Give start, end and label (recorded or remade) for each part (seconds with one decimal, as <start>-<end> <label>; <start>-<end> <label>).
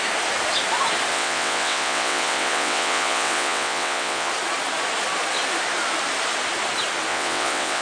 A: 0.0-1.1 recorded; 1.1-4.3 remade; 4.3-7.1 recorded; 7.1-7.8 remade